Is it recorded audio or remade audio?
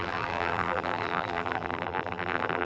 remade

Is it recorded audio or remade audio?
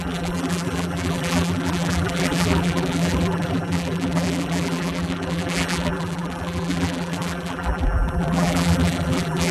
remade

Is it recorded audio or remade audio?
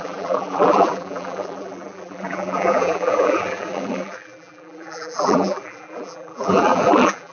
remade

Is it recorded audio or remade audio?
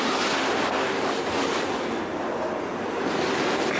recorded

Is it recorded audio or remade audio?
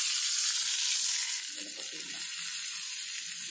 recorded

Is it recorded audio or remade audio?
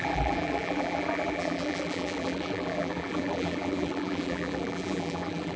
remade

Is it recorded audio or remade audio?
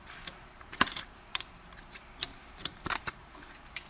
remade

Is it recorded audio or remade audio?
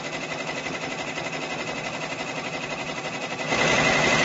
recorded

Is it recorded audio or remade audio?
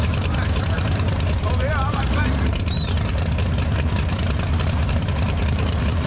remade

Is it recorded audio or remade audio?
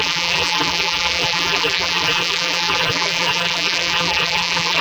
remade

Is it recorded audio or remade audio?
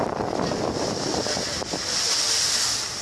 remade